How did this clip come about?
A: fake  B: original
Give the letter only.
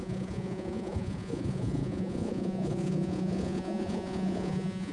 A